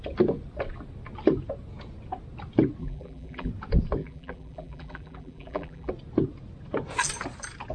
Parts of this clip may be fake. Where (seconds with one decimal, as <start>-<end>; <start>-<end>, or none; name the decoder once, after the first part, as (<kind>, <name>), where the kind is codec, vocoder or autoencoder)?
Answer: 2.8-3.5 (vocoder, BigVGAN v2); 4.0-5.9